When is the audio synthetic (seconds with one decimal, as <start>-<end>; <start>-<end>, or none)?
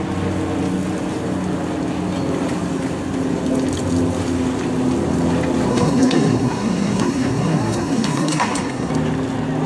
5.7-8.9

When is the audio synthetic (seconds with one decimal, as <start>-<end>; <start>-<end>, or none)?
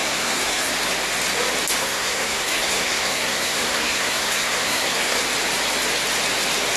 0.0-0.7; 1.8-5.2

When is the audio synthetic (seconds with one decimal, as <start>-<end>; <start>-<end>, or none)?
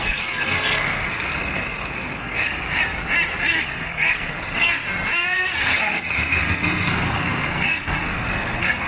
0.0-2.8; 3.5-4.8; 5.6-8.9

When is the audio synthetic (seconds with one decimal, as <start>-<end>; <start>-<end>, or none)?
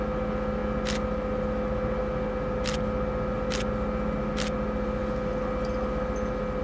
none